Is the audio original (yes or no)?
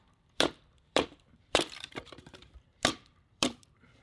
no